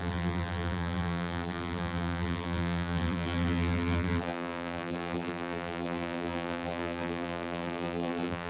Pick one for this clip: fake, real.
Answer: fake